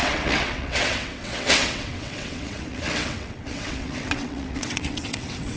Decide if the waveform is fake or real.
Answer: fake